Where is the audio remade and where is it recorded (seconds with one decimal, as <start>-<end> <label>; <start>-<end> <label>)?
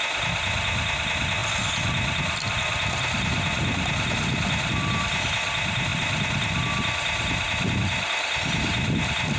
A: 0.0-9.4 recorded